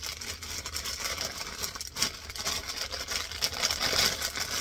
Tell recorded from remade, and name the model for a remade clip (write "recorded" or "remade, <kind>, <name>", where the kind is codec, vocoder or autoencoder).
recorded